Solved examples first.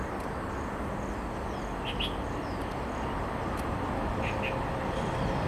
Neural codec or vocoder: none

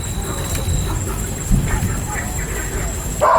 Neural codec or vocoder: none